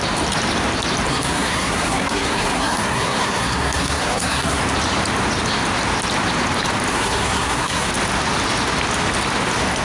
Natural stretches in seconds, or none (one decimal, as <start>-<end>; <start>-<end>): 0.0-1.1; 4.6-6.9; 7.9-9.8